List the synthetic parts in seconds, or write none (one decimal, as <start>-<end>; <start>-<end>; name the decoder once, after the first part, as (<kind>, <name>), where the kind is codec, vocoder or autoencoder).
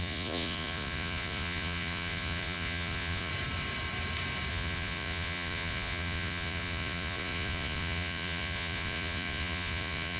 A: 0.0-3.3 (vocoder, Vocos); 4.5-10.2